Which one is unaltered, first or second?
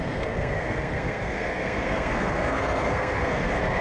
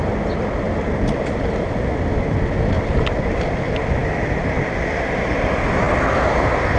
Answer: second